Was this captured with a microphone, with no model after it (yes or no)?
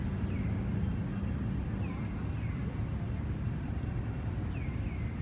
yes